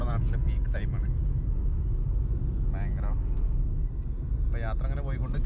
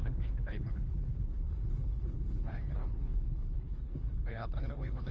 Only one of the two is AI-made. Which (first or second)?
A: second